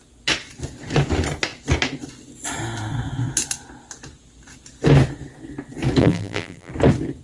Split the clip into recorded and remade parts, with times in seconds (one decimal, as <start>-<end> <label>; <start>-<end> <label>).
0.0-6.0 recorded; 6.0-6.7 remade; 6.7-7.2 recorded